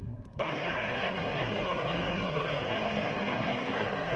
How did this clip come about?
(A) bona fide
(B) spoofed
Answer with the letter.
B